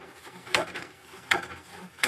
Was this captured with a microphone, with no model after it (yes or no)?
no